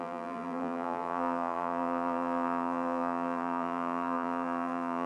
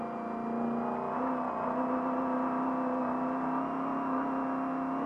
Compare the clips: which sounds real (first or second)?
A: second